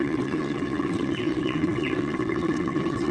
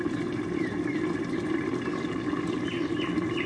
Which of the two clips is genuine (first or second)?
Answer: second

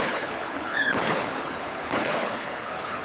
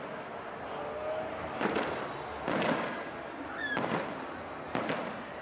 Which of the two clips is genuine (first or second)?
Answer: second